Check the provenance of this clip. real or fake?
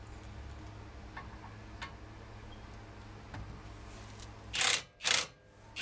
real